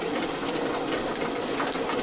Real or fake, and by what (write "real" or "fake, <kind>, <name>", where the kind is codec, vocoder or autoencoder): real